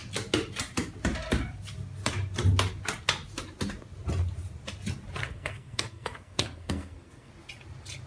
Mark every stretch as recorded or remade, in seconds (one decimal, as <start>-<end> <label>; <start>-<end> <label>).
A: 0.0-5.2 recorded; 5.2-7.3 remade; 7.3-8.1 recorded